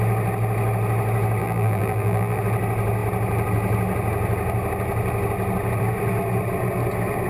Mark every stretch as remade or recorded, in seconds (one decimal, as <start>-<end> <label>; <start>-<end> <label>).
0.0-1.4 recorded; 1.4-2.4 remade; 2.4-7.3 recorded